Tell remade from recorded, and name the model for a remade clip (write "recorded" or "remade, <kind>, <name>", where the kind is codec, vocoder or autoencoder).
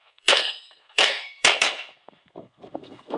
remade, codec, SNAC